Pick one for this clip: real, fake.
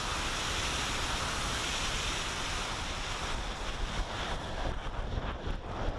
real